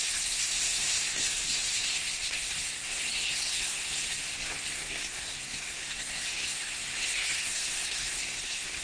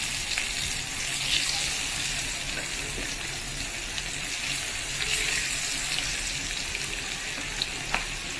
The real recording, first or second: second